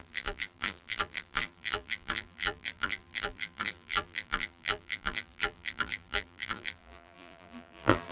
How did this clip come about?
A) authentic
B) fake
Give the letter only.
B